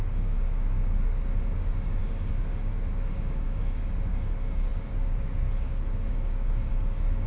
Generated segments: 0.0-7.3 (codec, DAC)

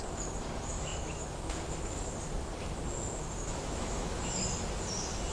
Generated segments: 0.9-2.1 (autoencoder, DAC-VAE); 3.4-4.4

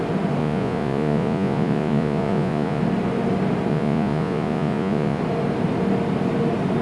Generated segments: 0.4-2.8 (vocoder, Vocos); 3.7-5.2

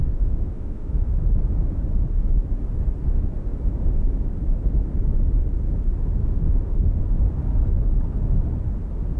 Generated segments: 0.0-1.3 (autoencoder, DAC-VAE); 6.2-7.0

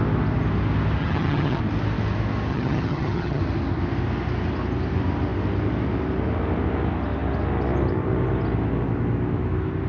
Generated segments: 1.0-1.6 (vocoder, HiFi-GAN); 2.5-3.4